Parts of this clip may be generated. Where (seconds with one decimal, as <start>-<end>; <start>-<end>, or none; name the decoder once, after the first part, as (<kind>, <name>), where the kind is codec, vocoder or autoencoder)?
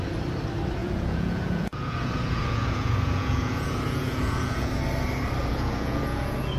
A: 0.8-4.7 (vocoder, Vocos); 5.4-6.6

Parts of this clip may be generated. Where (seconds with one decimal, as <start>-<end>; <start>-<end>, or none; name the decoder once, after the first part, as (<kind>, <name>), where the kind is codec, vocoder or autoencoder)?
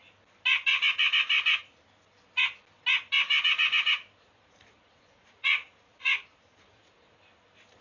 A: 4.2-7.2 (vocoder, Vocos)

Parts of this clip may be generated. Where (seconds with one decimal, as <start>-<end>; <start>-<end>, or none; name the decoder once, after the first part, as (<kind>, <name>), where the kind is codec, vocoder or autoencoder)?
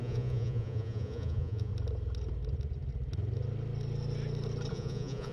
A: 0.0-1.7 (vocoder, Vocos); 4.7-5.3